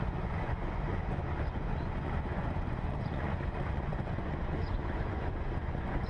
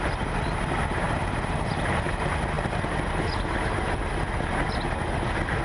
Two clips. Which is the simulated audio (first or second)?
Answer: first